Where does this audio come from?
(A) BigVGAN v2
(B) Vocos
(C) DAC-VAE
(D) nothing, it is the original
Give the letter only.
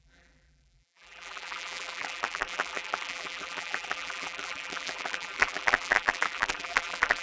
A